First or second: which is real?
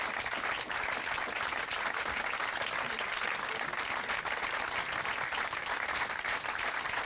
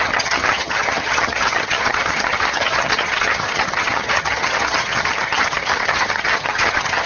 first